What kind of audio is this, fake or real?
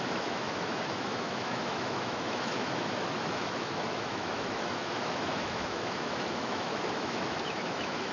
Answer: fake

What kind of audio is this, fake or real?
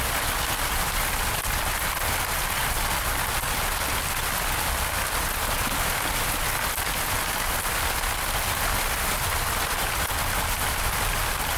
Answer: real